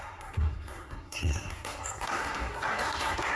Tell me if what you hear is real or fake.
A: fake